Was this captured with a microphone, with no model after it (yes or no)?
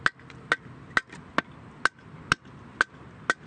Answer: yes